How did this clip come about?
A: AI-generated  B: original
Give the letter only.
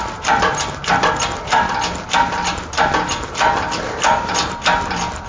B